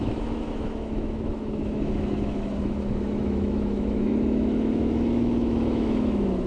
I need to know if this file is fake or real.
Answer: fake